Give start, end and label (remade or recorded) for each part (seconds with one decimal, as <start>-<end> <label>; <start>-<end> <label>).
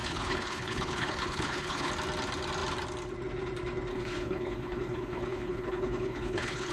0.0-1.9 remade; 1.9-3.9 recorded; 3.9-6.7 remade